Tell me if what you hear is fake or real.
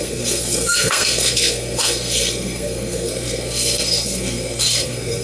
fake